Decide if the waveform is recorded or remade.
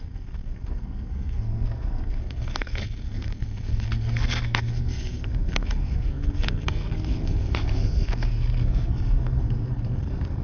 remade